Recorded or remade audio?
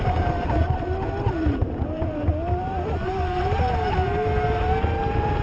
recorded